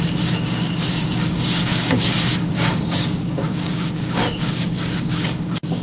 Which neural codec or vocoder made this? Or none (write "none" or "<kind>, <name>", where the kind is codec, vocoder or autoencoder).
codec, DAC